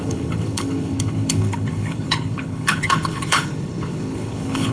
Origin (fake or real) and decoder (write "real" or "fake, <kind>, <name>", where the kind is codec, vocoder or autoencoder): fake, codec, HILCodec